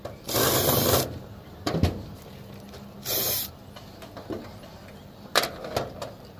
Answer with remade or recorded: remade